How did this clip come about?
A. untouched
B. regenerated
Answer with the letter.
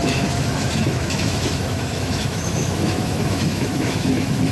B